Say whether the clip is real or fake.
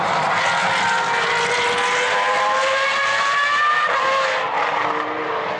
real